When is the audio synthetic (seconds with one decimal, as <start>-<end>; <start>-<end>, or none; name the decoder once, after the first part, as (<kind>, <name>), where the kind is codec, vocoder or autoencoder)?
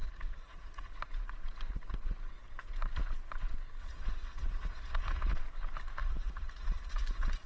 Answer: 0.0-0.9 (vocoder, Vocos); 3.8-5.3; 6.0-7.5